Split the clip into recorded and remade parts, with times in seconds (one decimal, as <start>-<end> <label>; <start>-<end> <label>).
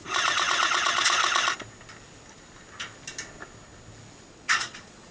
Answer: 0.0-1.2 remade; 1.2-4.3 recorded; 4.3-5.1 remade